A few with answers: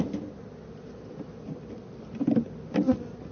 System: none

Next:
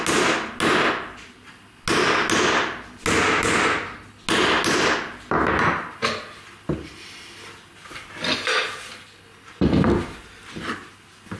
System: none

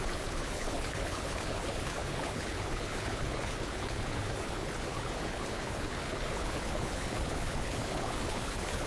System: codec, HILCodec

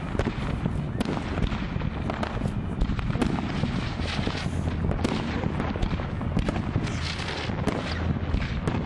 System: none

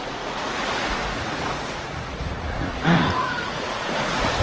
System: vocoder, Vocos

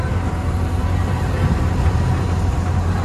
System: vocoder, BigVGAN v2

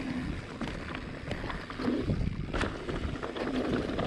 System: none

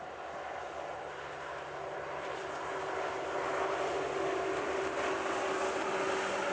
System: none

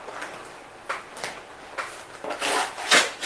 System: none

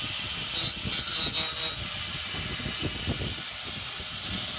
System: none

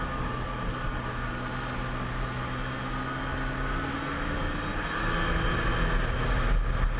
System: none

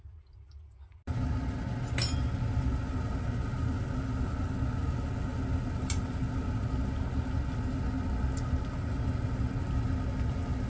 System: none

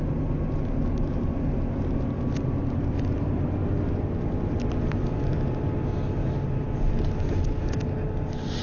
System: none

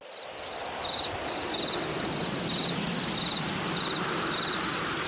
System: none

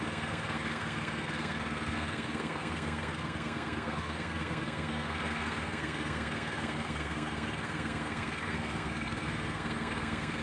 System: codec, SNAC